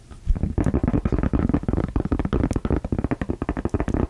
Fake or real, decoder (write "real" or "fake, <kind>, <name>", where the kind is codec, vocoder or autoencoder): real